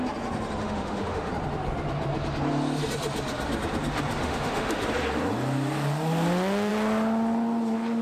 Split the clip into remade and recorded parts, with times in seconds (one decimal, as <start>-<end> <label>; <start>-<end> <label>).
0.0-0.6 recorded; 0.6-1.3 remade; 1.3-4.2 recorded; 4.2-4.9 remade; 4.9-8.0 recorded